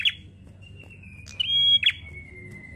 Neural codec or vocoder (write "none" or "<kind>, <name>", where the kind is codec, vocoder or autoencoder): none